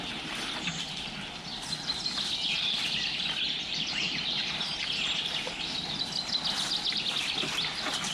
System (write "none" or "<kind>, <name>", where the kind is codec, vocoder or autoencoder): none